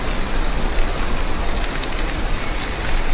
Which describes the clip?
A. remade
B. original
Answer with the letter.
B